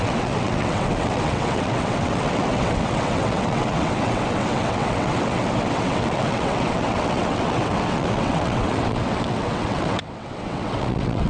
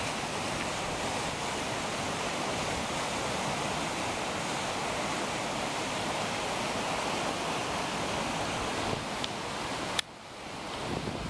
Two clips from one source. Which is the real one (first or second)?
second